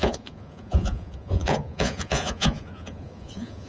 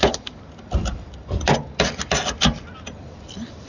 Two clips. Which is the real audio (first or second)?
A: second